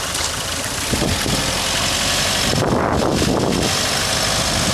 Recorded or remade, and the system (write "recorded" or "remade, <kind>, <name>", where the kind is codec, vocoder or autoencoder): recorded